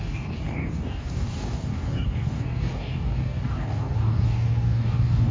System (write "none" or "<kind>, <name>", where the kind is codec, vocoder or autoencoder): codec, DAC